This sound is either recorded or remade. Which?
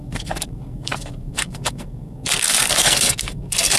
remade